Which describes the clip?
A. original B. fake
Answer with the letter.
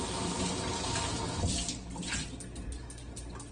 A